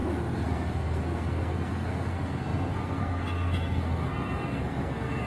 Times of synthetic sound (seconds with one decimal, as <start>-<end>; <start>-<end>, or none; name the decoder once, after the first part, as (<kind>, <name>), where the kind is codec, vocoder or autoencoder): 0.0-5.3 (codec, SNAC)